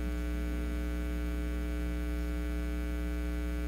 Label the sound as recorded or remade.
recorded